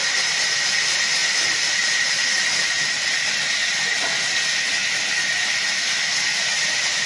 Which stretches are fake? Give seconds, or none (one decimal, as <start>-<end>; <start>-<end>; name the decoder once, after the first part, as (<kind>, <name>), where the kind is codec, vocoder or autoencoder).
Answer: none